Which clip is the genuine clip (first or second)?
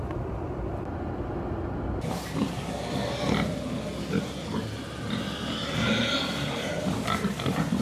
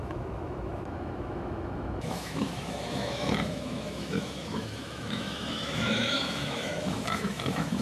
first